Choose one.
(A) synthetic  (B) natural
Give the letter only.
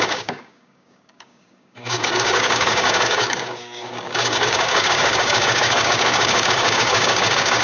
A